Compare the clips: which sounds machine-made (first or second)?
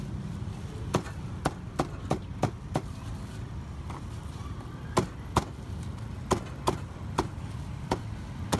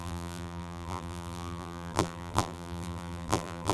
second